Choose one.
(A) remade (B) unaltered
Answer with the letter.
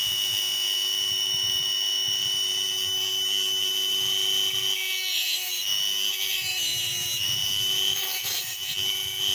A